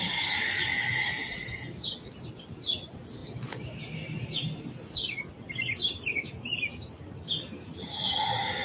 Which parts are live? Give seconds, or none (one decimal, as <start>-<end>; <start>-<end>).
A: 0.0-8.6

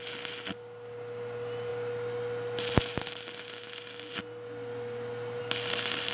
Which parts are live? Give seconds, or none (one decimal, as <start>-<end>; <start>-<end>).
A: 0.0-6.1